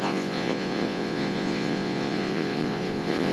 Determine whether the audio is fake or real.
fake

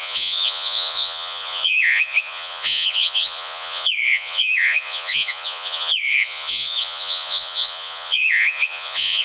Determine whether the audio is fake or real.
fake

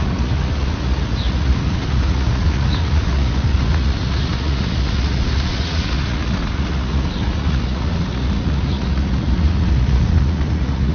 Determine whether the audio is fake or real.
fake